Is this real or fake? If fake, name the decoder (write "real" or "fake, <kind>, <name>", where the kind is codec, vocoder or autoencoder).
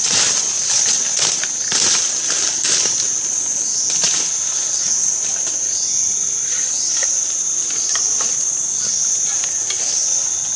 real